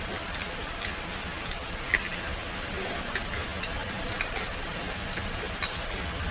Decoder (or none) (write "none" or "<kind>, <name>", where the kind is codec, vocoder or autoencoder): none